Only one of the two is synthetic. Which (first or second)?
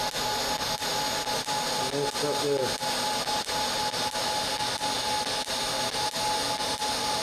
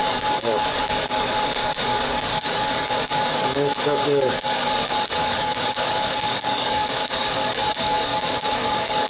second